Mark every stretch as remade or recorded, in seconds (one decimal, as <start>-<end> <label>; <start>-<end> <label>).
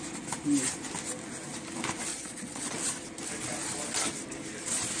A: 0.0-2.1 recorded; 2.1-2.7 remade; 2.7-5.0 recorded